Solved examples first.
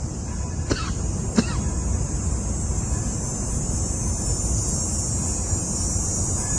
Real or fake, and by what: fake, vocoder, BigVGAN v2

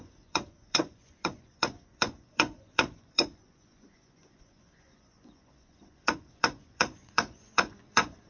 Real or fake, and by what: fake, vocoder, Vocos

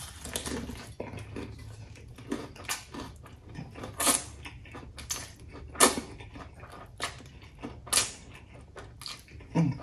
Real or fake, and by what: real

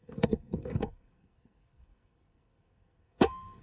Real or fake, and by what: fake, codec, SNAC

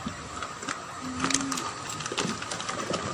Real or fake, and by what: real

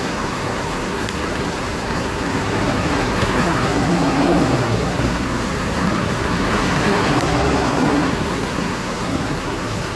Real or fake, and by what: fake, codec, SNAC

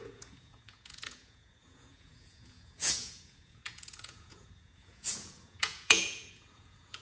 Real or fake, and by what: fake, vocoder, Vocos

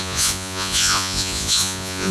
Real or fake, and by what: fake, vocoder, Vocos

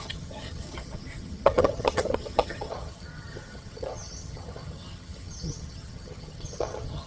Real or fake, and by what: fake, vocoder, HiFi-GAN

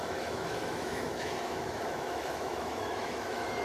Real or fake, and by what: fake, autoencoder, DAC-VAE